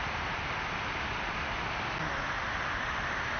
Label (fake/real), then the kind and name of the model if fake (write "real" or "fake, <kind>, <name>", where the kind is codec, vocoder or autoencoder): real